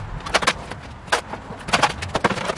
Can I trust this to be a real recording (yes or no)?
yes